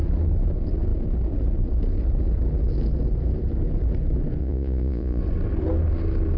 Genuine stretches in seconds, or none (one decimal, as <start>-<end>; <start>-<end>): 0.0-4.4; 5.2-6.4